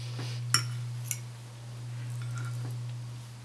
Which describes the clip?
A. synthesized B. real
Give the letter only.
B